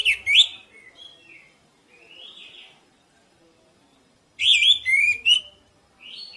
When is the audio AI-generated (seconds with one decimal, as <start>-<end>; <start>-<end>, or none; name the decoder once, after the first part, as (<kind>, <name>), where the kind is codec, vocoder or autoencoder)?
0.9-6.4 (vocoder, BigVGAN v2)